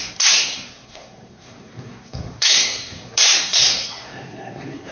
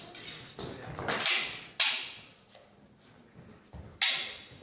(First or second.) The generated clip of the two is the first